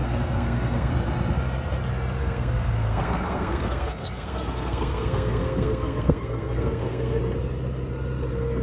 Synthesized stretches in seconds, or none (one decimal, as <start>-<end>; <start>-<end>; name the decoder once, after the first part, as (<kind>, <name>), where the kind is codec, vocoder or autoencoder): 0.0-0.9 (codec, SNAC); 2.2-7.2